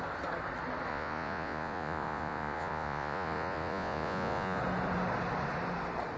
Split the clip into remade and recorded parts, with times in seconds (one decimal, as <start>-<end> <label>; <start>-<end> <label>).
0.0-0.9 recorded; 0.9-4.6 remade; 4.6-6.2 recorded